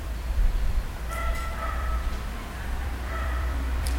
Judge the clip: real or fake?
fake